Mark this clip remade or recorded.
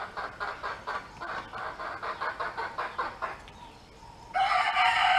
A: recorded